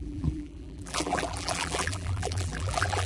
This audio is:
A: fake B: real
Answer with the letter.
A